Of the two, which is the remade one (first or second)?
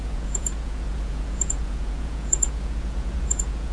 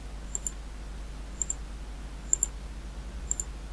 first